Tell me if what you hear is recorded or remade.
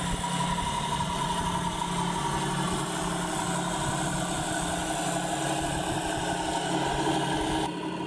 recorded